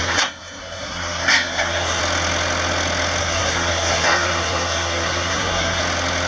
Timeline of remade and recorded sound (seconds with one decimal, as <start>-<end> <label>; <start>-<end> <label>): 0.0-2.0 remade; 2.0-3.2 recorded; 3.2-5.8 remade; 5.8-6.3 recorded